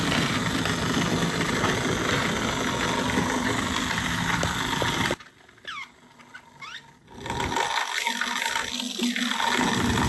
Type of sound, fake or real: real